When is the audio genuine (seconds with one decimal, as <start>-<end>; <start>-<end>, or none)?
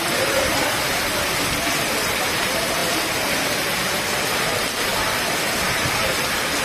2.8-4.0